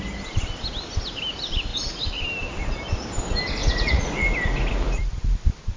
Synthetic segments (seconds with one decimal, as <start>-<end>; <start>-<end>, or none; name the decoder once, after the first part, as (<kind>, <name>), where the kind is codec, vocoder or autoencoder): 3.6-4.2 (vocoder, Vocos)